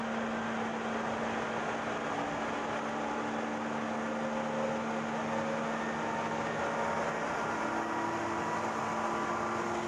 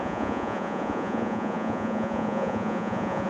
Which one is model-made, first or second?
second